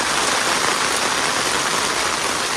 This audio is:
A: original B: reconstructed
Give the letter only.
A